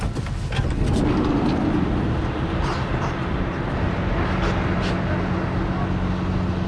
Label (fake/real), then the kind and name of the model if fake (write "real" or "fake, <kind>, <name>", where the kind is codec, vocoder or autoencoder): real